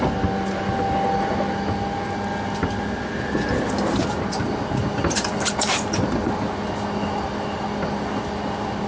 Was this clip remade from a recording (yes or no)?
no